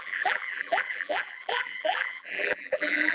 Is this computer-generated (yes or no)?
yes